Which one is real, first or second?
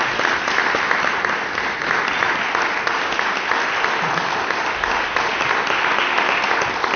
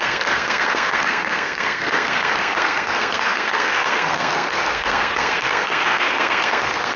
first